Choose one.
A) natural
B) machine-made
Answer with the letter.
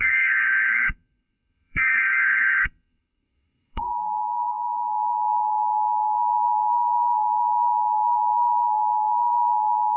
B